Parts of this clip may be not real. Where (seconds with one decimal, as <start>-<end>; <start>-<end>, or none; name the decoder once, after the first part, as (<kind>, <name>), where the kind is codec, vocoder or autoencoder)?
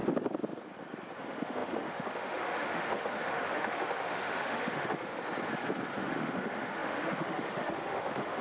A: 1.2-5.1 (autoencoder, DAC-VAE); 6.0-8.4